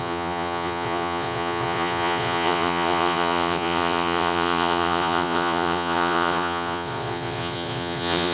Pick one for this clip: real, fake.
fake